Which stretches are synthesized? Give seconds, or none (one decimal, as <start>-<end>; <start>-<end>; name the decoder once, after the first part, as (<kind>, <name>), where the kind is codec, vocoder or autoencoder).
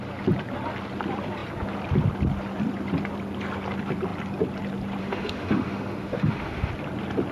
5.0-6.7 (autoencoder, DAC-VAE)